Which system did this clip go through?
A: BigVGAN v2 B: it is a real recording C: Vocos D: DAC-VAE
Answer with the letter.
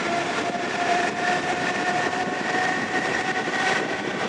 A